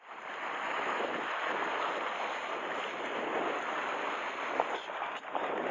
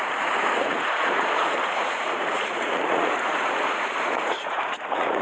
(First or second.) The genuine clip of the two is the first